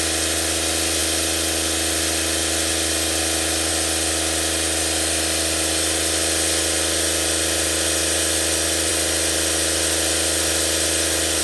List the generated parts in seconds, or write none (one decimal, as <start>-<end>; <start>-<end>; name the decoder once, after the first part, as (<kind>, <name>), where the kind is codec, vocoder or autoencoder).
none